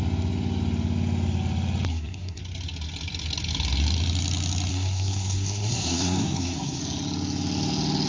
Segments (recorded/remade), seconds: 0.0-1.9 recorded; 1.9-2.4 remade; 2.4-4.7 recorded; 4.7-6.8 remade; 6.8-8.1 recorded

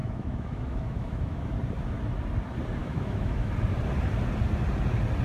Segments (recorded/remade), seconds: 0.0-1.5 remade; 1.5-2.8 recorded; 2.8-3.5 remade; 3.5-5.2 recorded